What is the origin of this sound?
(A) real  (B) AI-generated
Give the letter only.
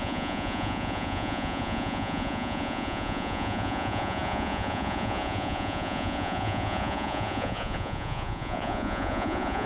B